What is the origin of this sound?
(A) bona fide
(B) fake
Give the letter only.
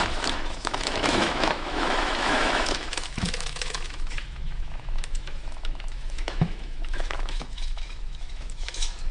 B